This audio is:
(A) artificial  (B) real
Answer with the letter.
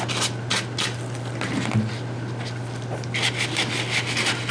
B